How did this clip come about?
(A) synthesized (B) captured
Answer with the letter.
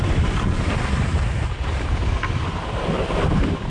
B